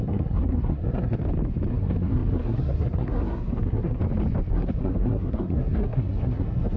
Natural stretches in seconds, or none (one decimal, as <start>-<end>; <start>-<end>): 1.2-1.7; 4.0-4.5